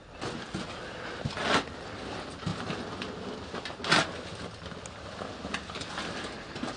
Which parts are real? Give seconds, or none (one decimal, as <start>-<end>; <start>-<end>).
0.0-6.8